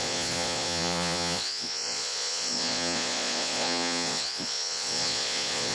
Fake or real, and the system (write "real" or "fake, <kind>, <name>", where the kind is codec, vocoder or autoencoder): fake, vocoder, Vocos